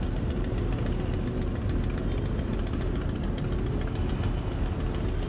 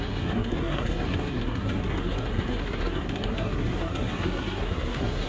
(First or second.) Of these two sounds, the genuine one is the first